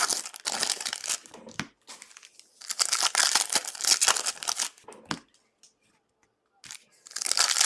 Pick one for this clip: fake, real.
real